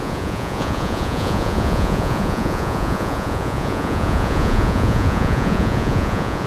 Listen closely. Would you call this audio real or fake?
fake